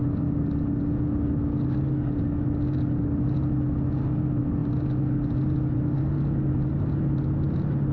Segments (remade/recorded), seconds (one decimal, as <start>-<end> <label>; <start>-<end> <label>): 0.0-7.9 recorded